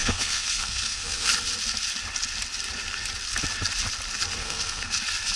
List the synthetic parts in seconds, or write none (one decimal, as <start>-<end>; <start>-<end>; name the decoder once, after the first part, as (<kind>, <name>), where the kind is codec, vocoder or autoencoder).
0.0-1.3 (codec, SNAC); 4.4-5.0